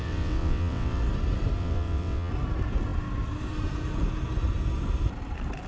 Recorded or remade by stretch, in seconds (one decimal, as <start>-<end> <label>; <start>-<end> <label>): 0.0-1.0 remade; 1.0-1.6 recorded; 1.6-2.3 remade; 2.3-5.7 recorded